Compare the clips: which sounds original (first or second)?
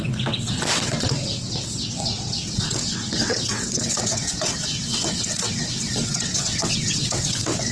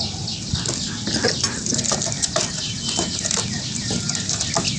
second